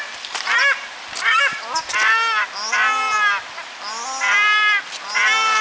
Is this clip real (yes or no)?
yes